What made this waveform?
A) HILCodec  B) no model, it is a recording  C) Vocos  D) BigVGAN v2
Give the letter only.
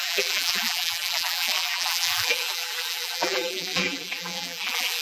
D